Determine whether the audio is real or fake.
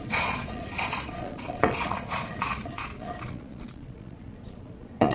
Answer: fake